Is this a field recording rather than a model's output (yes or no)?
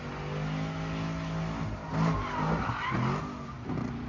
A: yes